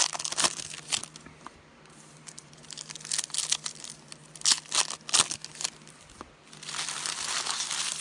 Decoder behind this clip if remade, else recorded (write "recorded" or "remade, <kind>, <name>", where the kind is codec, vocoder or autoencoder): recorded